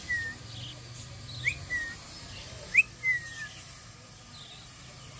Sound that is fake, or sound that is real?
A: real